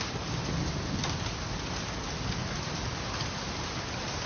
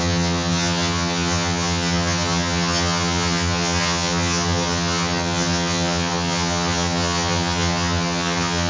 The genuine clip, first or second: first